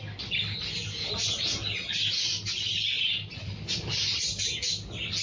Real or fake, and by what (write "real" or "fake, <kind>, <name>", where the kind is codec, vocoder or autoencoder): real